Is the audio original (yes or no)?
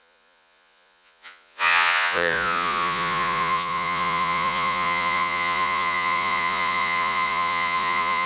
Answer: no